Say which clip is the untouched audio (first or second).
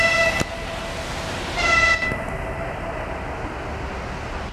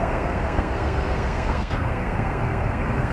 first